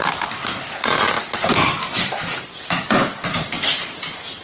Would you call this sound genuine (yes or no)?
yes